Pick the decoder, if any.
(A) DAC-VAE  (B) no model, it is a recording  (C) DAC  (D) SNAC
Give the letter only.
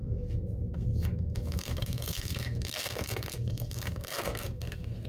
D